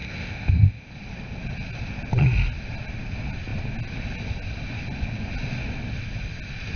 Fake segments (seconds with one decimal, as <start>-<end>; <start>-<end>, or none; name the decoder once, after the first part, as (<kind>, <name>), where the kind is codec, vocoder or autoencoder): 0.0-0.9 (codec, ZipCodec)